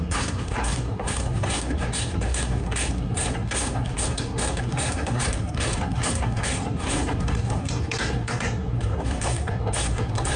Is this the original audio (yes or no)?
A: no